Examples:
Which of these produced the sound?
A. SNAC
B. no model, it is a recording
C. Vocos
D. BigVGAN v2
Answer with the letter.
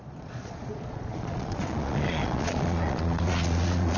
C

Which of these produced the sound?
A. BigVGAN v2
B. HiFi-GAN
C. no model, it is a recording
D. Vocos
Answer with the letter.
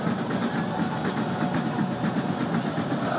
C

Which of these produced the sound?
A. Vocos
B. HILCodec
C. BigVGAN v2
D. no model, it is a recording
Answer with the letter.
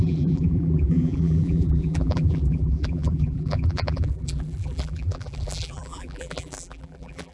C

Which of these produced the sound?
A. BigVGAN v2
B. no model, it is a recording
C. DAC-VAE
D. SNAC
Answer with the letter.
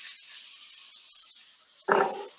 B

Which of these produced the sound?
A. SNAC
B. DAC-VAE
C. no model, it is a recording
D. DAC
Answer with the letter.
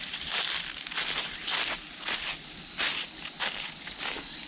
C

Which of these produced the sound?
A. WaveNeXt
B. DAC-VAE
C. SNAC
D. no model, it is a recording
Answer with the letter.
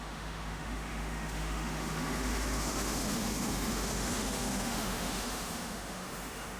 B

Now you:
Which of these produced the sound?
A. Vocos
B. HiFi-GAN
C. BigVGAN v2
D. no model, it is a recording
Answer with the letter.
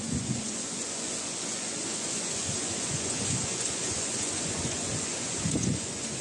A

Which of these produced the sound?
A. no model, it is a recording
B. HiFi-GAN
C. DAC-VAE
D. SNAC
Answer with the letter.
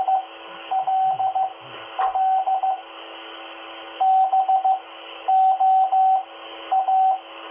A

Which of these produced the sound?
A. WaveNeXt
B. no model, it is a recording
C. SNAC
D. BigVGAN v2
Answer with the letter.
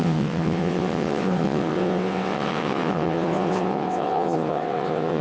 A